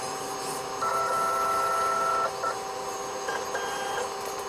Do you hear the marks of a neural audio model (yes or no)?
no